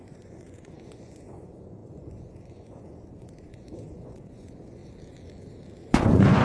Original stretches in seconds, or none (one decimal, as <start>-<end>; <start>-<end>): 4.8-5.8